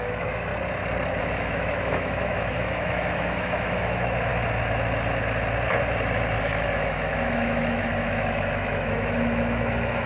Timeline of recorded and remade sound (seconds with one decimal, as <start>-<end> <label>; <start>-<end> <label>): 0.0-0.5 remade; 0.5-1.2 recorded; 1.2-4.3 remade; 4.3-6.4 recorded; 6.4-10.1 remade